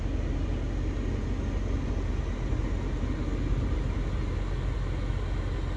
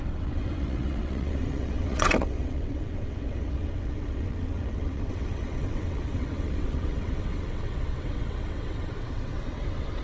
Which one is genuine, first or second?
first